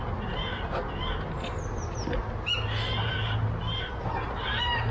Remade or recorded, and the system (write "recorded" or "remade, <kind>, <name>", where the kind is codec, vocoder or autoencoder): recorded